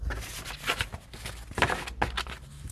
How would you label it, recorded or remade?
recorded